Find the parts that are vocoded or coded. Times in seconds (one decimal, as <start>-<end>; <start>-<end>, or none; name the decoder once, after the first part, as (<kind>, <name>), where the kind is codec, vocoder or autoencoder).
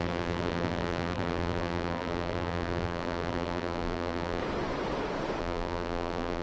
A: 0.0-4.4 (vocoder, BigVGAN v2); 5.4-6.4